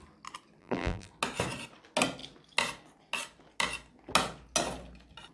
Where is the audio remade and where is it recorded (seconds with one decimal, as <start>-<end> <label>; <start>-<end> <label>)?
0.0-0.6 recorded; 0.6-1.1 remade; 1.1-5.3 recorded